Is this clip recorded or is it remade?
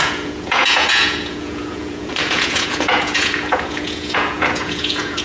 remade